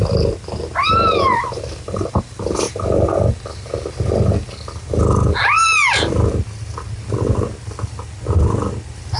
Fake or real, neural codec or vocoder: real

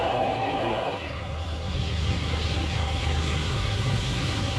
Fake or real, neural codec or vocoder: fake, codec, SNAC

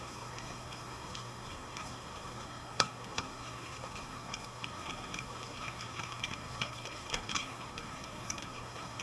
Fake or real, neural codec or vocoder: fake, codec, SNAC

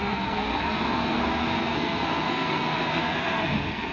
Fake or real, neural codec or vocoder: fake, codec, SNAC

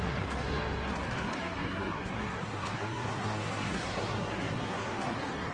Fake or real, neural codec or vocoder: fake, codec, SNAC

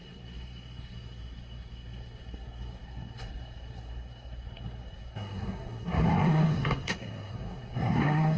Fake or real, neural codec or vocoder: fake, codec, SNAC